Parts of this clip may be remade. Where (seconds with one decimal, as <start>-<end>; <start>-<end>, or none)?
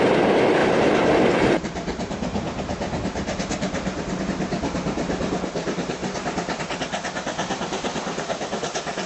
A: 0.0-6.0; 6.6-9.1